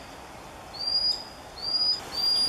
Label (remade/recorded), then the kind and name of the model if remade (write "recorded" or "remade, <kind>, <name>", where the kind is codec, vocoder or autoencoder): recorded